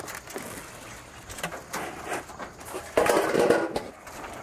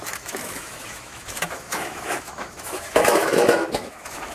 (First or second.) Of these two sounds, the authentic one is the first